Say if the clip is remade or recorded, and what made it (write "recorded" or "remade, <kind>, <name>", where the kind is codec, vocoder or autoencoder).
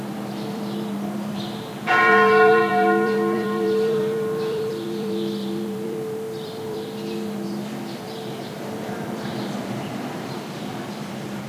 remade, vocoder, BigVGAN v2